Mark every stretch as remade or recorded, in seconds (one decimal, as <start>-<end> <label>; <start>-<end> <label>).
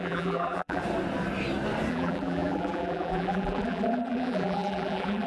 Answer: 0.0-0.8 remade; 0.8-1.9 recorded; 1.9-5.3 remade